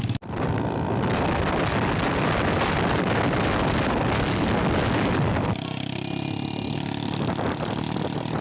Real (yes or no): yes